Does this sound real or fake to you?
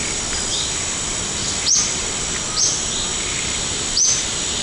real